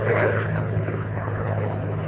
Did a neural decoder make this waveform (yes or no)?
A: yes